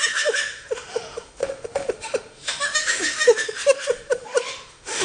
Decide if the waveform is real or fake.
fake